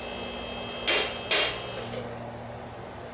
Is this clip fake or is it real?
real